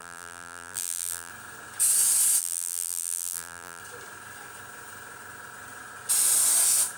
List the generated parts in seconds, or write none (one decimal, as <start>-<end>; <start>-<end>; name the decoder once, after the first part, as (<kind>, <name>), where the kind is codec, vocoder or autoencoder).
0.0-1.3 (vocoder, BigVGAN v2); 2.4-3.8